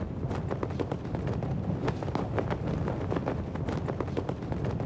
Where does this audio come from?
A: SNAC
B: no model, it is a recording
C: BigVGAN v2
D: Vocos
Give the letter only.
B